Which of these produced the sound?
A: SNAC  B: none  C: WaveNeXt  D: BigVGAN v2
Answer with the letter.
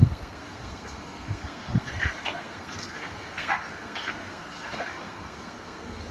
A